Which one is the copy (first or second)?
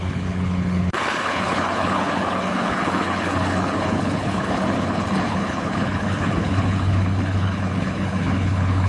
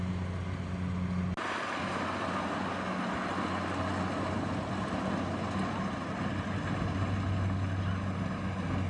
first